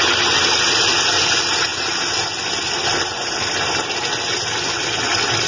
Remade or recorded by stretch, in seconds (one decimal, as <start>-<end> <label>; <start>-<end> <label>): 0.0-5.5 recorded